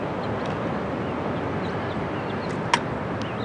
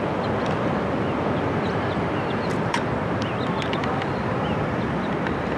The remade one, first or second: second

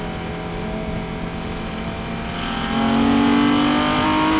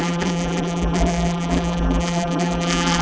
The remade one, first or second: second